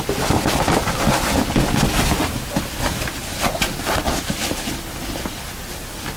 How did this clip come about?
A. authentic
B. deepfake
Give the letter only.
A